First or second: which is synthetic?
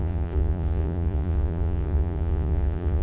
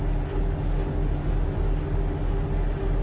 first